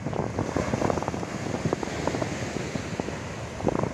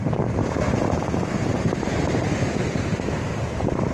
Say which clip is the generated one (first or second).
second